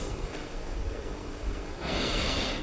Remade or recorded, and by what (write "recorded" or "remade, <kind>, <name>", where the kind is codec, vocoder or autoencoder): remade, codec, SNAC